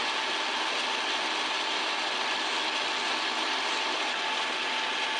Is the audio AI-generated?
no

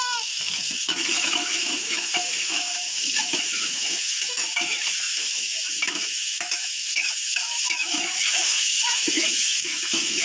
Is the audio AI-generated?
yes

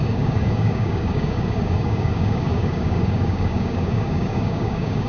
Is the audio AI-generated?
yes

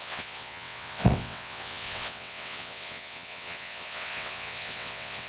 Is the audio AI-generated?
yes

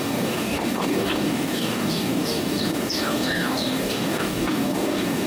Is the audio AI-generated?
yes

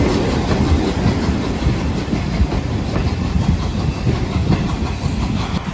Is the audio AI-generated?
no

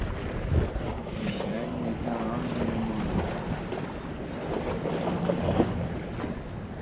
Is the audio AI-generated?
no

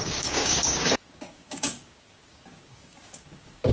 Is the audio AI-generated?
yes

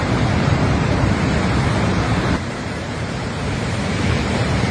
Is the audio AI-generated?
yes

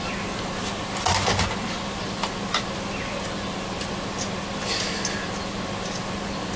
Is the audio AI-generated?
no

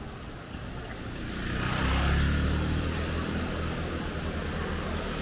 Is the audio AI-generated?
no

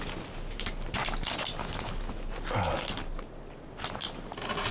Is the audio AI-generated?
no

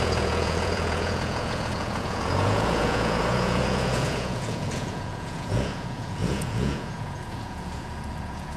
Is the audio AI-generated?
yes